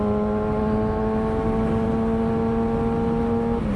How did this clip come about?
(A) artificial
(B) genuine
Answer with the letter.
B